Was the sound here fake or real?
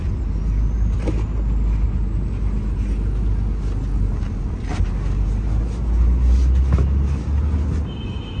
real